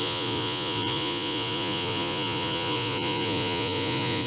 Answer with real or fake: fake